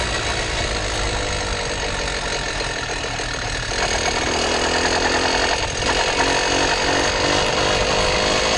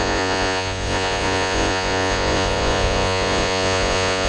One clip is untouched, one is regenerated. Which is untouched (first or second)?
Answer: first